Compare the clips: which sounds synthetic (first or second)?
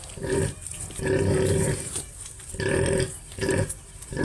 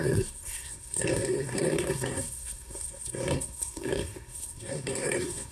second